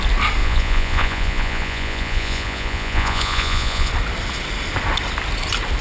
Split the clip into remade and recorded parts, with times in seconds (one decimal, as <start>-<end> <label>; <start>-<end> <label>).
0.0-0.4 recorded; 0.4-3.9 remade; 3.9-5.8 recorded